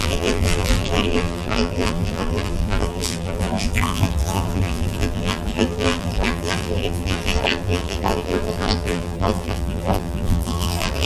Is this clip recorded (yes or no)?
no